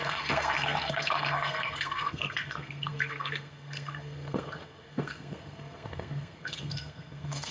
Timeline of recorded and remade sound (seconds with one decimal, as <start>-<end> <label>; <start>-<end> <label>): 0.0-7.5 remade